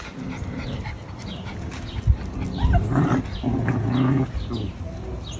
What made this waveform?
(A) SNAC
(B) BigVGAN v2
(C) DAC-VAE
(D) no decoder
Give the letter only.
D